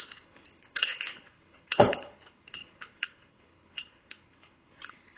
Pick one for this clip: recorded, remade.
remade